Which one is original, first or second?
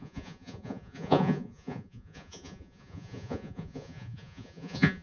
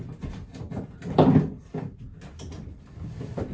second